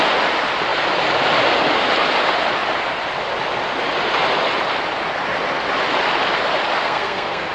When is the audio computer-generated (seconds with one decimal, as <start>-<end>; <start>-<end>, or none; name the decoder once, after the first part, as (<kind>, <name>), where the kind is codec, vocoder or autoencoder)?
6.8-7.5 (codec, SNAC)